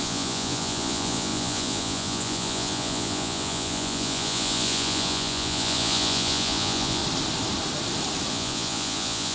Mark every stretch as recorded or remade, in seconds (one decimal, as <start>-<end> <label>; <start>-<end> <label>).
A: 0.0-7.0 remade; 7.0-8.3 recorded; 8.3-9.3 remade